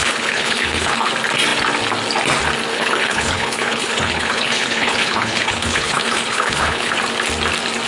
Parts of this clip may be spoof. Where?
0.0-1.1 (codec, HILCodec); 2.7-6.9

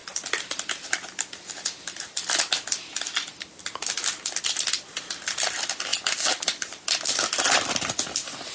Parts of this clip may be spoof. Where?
none

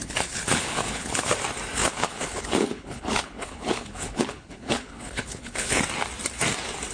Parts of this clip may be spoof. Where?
0.0-1.3 (codec, HILCodec); 1.8-5.8

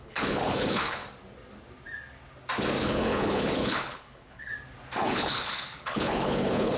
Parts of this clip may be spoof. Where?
0.0-1.0 (codec, HILCodec); 2.8-4.5; 5.0-6.8

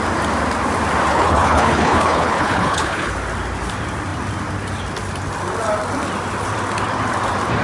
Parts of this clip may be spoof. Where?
1.1-3.1 (codec, HILCodec)